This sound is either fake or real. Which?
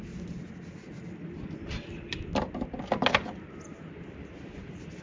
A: real